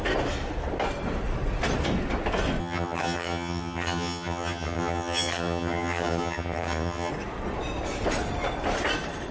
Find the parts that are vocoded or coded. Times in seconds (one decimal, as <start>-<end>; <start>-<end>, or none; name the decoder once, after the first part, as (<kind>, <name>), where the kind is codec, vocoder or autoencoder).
2.6-7.1 (vocoder, HiFi-GAN)